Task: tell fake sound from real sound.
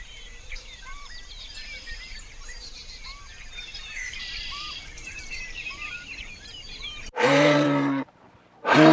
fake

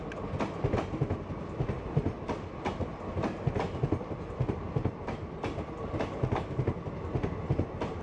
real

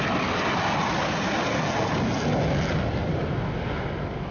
real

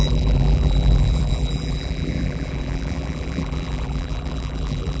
fake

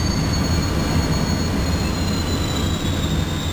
real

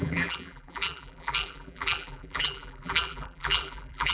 fake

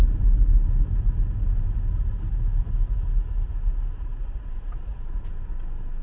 real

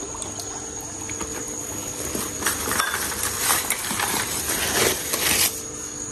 real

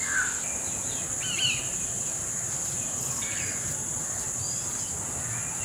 real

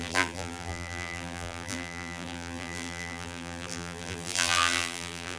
fake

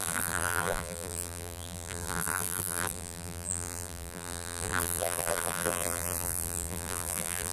fake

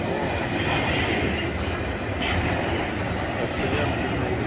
real